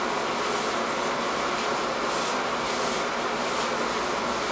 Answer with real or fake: real